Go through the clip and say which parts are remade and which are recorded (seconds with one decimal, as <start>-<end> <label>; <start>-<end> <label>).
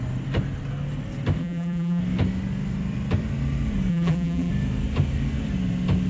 0.0-1.4 recorded; 1.4-2.0 remade; 2.0-3.9 recorded; 3.9-4.5 remade; 4.5-6.1 recorded